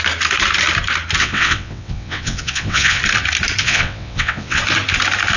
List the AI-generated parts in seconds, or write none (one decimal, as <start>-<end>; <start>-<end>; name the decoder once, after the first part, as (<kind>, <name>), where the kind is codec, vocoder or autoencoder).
1.2-3.0 (vocoder, WaveNeXt); 3.6-4.6